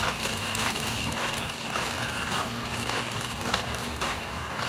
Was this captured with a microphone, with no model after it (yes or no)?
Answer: no